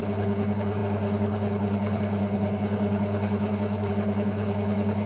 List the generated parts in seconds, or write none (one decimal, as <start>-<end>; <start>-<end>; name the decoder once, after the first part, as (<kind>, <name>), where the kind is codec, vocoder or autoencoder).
0.0-5.1 (codec, HILCodec)